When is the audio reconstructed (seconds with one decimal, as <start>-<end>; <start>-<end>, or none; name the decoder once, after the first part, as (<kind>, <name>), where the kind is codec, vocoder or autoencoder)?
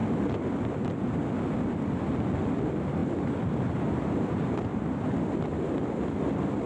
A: 0.0-1.1 (vocoder, BigVGAN v2); 3.0-3.8; 4.7-6.7